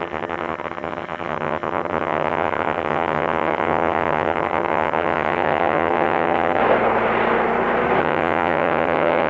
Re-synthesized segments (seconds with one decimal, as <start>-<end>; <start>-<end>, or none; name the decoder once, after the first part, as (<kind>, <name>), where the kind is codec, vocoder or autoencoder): 0.0-6.6 (vocoder, HiFi-GAN); 8.0-9.3